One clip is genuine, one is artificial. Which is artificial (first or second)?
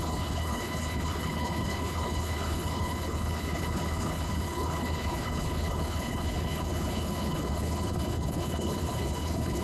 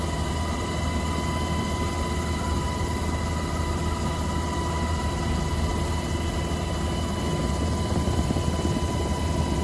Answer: first